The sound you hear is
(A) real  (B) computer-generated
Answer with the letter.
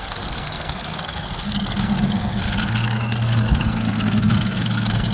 B